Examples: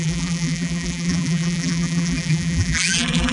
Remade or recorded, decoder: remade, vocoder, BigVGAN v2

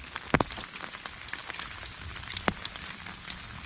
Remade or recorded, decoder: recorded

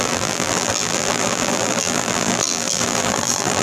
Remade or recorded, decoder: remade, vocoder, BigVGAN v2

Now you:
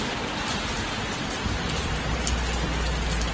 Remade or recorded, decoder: recorded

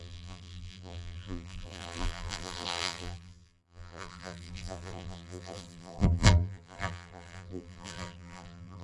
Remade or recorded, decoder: remade, vocoder, BigVGAN v2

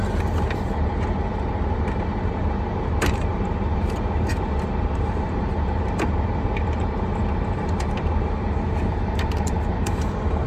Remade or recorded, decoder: remade, vocoder, BigVGAN v2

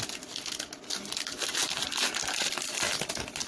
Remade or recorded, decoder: recorded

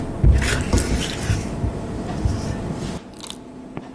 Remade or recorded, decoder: recorded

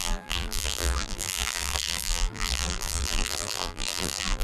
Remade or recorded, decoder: remade, vocoder, BigVGAN v2